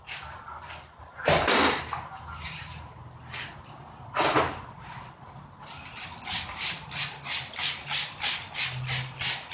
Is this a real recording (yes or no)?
no